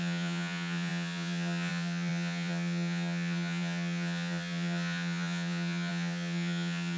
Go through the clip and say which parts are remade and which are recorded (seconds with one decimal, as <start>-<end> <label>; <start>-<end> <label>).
0.0-7.0 remade